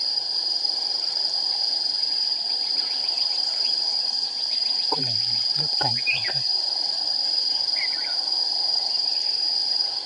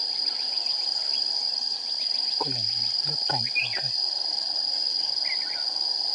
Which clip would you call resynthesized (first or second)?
first